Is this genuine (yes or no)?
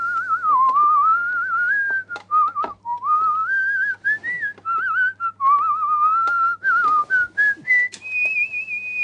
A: yes